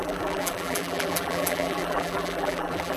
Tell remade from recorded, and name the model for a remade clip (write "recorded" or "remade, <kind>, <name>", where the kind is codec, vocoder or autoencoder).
remade, vocoder, BigVGAN v2